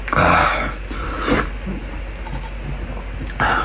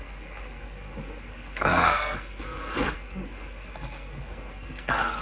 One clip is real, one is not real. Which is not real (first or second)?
second